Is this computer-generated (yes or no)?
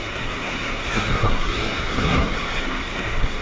yes